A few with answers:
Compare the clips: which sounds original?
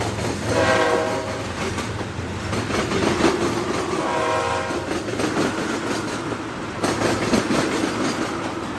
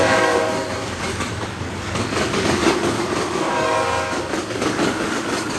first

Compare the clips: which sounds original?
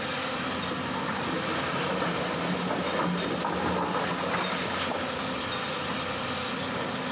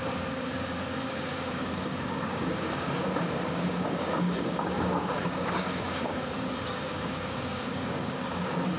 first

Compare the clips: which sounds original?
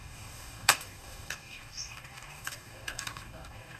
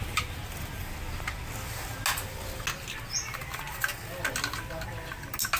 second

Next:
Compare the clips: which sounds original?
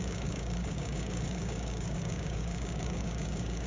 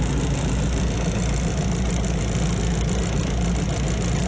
second